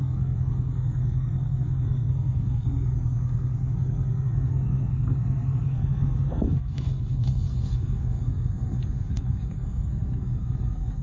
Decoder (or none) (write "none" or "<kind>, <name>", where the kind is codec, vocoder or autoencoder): codec, SNAC